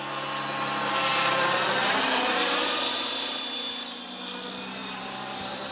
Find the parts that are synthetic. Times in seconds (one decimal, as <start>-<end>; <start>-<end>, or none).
1.1-3.4; 4.8-5.7